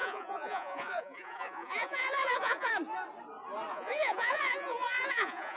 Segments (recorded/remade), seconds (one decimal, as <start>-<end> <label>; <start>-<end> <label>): 0.0-2.7 remade; 2.7-3.7 recorded; 3.7-5.6 remade